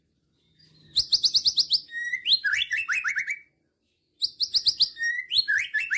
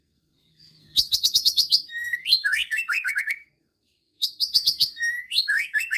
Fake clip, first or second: second